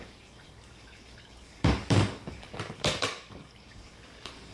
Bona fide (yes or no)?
no